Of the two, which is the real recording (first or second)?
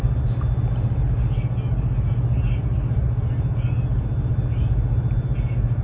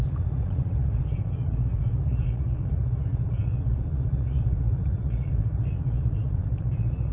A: first